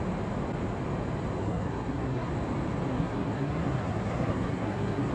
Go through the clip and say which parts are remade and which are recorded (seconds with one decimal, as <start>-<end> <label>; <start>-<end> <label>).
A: 0.0-1.4 recorded; 1.4-2.3 remade; 2.3-2.9 recorded; 2.9-5.1 remade